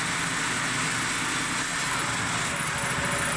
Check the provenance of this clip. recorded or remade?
recorded